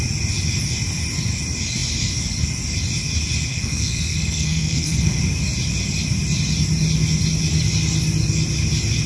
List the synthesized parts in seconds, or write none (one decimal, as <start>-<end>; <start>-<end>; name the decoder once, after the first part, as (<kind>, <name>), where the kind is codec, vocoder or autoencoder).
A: 3.5-5.2 (codec, SNAC)